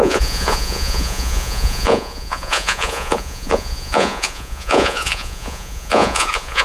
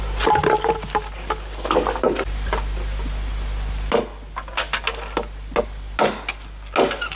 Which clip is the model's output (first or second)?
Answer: first